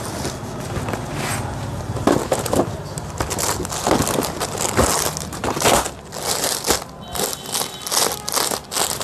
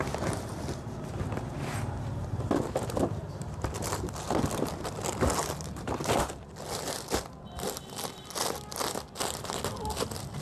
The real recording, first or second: first